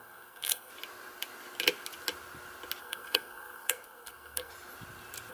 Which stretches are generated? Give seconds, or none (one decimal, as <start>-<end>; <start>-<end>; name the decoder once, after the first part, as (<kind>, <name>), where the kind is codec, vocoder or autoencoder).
0.0-0.7 (codec, SNAC); 2.8-4.5